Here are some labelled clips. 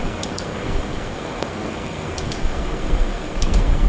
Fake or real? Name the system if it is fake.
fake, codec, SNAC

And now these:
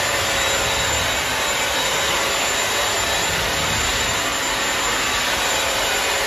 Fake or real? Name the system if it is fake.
real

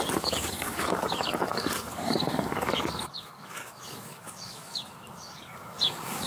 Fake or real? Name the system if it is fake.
fake, codec, DAC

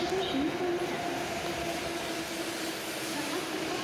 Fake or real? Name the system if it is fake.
real